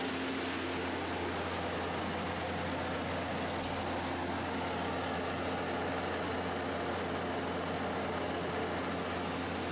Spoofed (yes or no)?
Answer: no